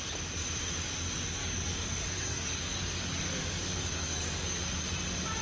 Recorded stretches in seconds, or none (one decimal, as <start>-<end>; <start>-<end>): 0.0-1.4; 4.6-5.4